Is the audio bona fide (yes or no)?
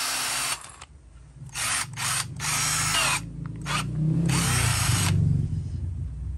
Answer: yes